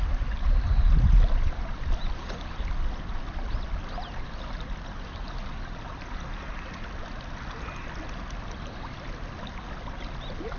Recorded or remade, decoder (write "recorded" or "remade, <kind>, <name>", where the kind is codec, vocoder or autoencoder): recorded